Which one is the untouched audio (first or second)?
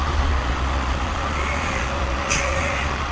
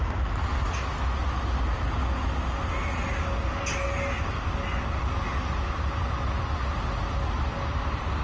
second